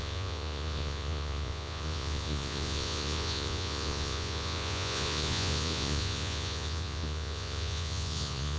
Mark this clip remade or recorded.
remade